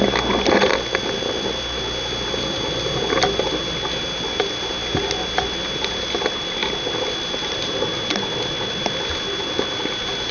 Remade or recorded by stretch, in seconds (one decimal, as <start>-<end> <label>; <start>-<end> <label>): 0.0-10.3 recorded